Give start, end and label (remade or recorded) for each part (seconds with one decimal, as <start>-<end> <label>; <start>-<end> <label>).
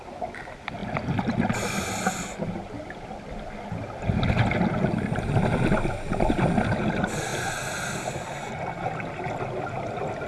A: 0.0-10.3 recorded